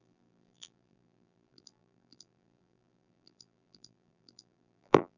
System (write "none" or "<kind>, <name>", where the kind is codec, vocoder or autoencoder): vocoder, BigVGAN v2